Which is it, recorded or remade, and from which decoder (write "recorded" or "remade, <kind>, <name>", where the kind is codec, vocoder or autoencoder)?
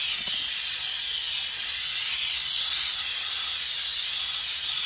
recorded